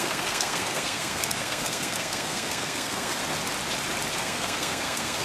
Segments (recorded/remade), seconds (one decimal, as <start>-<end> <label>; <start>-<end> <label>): 0.0-3.2 remade; 3.2-4.2 recorded; 4.2-5.2 remade

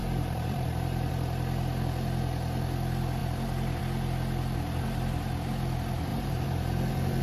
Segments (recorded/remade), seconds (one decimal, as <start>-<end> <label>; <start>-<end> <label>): 0.0-1.1 remade; 1.1-6.1 recorded; 6.1-7.2 remade

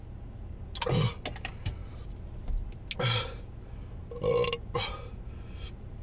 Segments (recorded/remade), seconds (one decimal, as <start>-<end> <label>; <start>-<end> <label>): 0.0-6.0 recorded

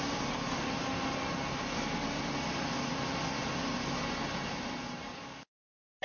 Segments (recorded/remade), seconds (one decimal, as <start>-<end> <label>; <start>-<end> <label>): 0.0-5.0 recorded; 5.0-5.6 remade; 5.6-6.0 recorded

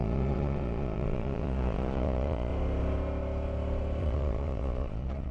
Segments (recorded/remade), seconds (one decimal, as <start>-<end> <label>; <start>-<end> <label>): 0.0-2.5 remade; 2.5-4.0 recorded; 4.0-5.3 remade

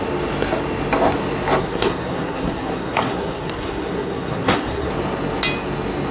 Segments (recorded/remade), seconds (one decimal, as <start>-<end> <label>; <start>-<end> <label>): 0.0-1.6 recorded; 1.6-4.9 remade; 4.9-6.1 recorded